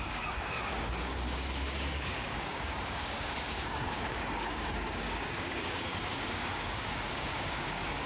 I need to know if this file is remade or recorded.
remade